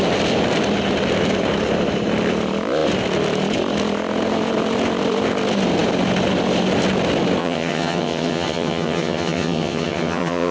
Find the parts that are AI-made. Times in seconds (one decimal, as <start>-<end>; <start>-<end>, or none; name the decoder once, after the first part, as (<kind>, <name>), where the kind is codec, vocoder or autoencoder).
7.4-10.5 (vocoder, HiFi-GAN)